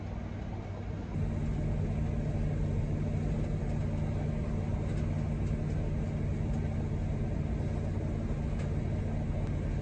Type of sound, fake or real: real